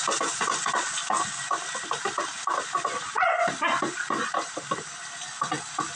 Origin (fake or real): real